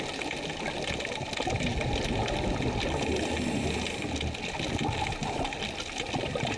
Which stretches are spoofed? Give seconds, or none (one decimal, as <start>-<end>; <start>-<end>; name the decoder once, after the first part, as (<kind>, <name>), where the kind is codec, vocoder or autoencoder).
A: none